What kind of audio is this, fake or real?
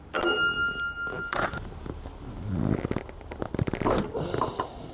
real